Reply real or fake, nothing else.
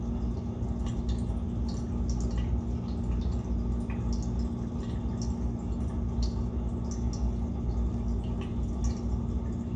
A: real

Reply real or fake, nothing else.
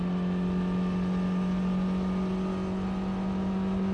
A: real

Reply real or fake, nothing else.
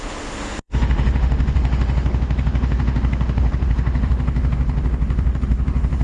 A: fake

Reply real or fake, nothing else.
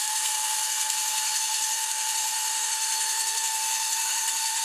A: fake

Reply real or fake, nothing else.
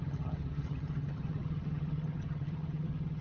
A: fake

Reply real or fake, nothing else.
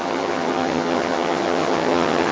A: fake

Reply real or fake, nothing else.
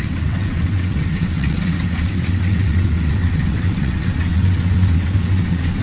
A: fake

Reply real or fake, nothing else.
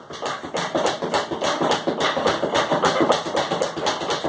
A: real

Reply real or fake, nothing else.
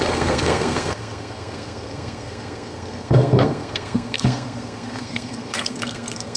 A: fake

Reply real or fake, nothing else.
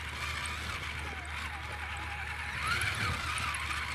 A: real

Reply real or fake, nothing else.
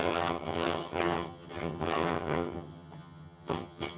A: fake